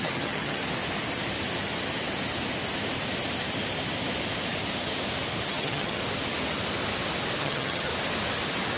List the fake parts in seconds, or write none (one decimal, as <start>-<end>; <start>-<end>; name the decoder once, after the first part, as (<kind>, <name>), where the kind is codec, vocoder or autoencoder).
0.0-0.6 (vocoder, HiFi-GAN); 5.5-6.0; 7.4-7.9